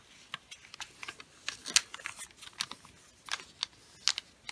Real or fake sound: real